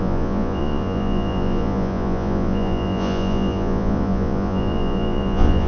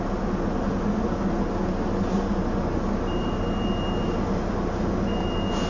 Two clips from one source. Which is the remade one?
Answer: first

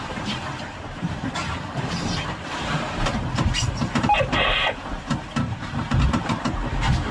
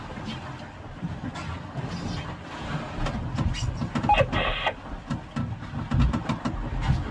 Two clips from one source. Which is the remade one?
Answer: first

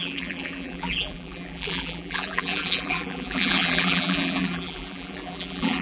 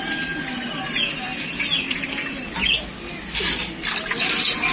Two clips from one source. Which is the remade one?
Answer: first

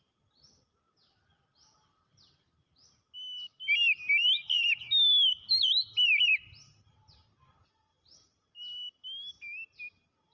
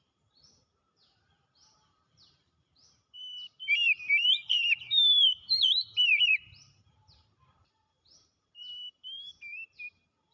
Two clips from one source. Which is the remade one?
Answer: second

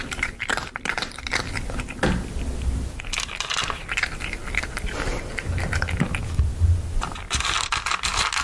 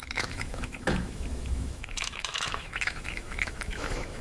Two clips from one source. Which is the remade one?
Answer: second